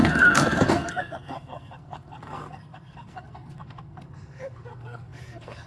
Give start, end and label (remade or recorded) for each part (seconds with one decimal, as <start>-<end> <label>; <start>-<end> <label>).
0.0-5.7 remade